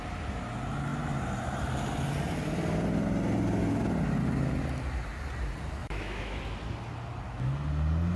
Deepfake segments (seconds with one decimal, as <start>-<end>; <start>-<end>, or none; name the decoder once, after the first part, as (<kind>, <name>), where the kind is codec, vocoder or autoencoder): 5.8-6.4 (autoencoder, DAC-VAE)